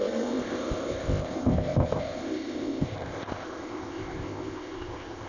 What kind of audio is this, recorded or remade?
remade